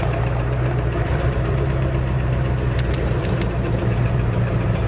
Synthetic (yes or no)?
yes